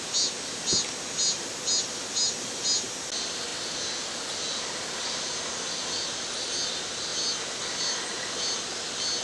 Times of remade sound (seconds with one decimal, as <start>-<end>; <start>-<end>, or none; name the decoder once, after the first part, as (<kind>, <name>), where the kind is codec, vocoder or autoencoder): none

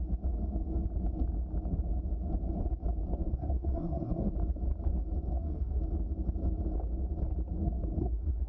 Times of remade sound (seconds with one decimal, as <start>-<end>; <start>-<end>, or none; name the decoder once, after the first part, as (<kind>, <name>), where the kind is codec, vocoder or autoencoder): 3.3-4.3 (codec, SNAC); 5.3-5.8; 8.0-8.5